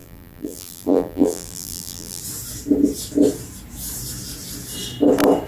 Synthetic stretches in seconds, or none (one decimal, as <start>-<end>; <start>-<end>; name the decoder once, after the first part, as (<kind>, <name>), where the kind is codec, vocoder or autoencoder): 0.0-2.2 (vocoder, BigVGAN v2)